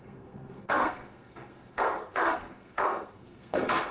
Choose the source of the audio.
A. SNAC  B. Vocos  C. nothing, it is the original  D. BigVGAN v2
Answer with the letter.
A